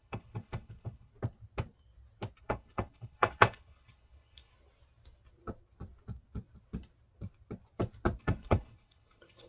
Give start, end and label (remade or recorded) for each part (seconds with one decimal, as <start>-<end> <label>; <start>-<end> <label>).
0.0-1.1 remade; 1.1-2.4 recorded; 2.4-4.5 remade; 4.5-8.2 recorded; 8.2-9.5 remade